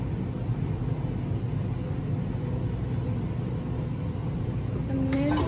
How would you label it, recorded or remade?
recorded